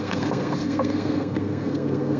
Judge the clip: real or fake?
fake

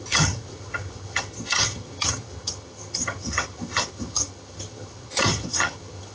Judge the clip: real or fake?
fake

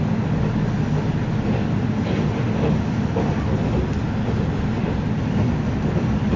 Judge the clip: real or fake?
real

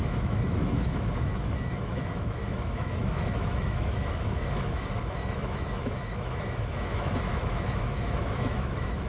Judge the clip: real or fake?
fake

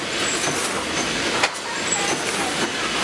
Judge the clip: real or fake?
real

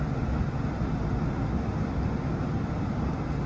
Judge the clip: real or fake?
real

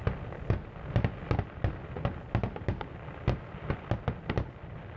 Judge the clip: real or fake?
real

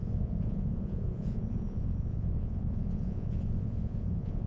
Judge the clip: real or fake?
fake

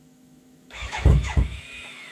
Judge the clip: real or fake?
fake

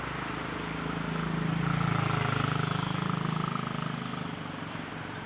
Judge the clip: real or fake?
real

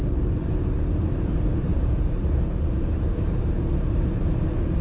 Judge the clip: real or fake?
fake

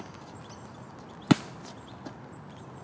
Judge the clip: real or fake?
real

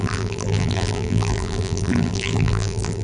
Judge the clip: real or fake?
fake